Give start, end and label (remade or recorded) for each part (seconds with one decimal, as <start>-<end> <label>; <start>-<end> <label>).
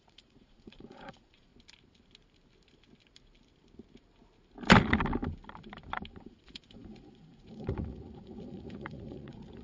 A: 0.0-1.5 remade; 1.5-6.2 recorded; 6.2-9.6 remade